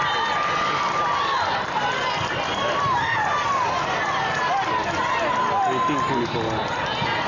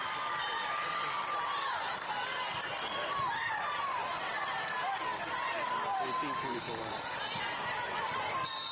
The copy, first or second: second